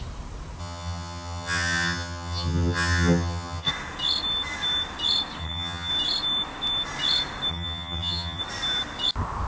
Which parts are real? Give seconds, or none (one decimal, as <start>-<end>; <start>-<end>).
0.0-0.6; 3.7-5.4; 5.9-7.5; 8.4-9.5